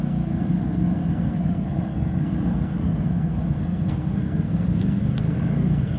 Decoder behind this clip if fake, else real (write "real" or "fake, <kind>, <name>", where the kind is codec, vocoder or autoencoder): fake, codec, SNAC